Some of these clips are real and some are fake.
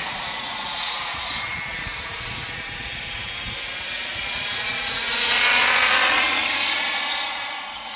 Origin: fake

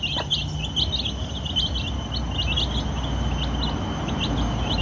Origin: real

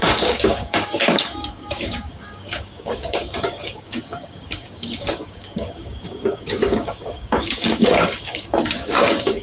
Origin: fake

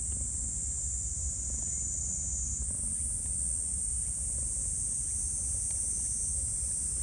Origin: real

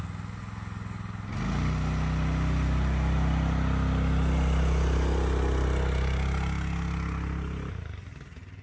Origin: real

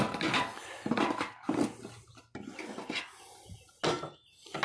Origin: real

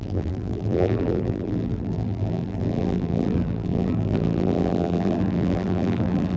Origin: fake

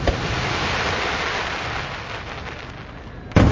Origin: real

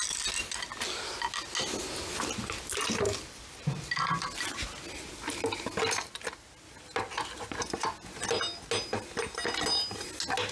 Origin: real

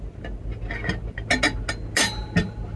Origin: real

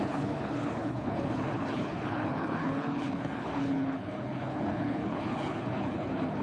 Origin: fake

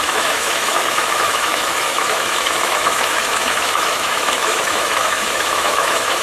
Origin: fake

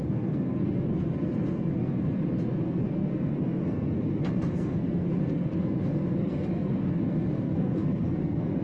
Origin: fake